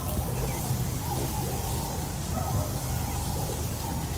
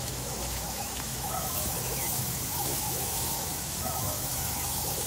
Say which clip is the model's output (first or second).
second